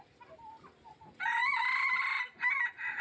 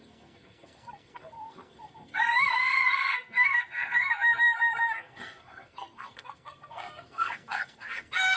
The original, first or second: first